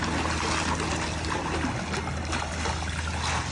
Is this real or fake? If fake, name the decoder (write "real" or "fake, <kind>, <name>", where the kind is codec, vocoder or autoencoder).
real